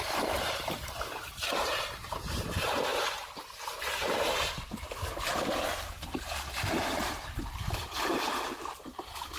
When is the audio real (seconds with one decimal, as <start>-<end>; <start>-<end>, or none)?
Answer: none